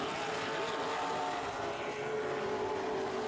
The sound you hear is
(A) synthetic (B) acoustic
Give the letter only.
B